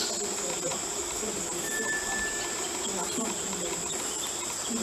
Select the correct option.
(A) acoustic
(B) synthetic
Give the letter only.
A